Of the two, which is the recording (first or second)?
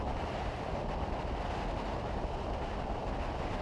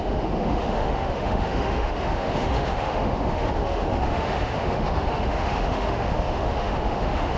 first